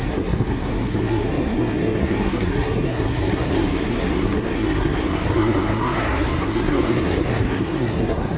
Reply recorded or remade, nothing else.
remade